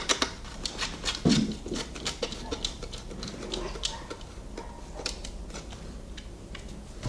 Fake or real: real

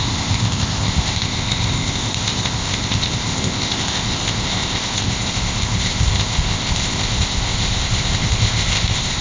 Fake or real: fake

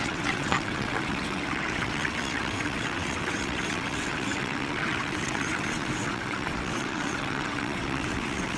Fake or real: fake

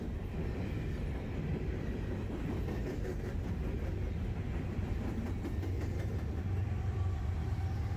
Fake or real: real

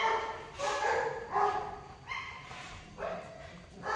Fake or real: real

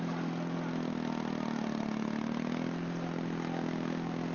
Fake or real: real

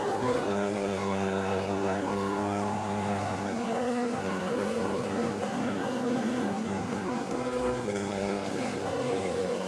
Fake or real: fake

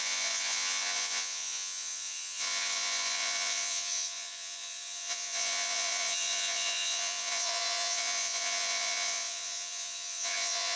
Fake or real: fake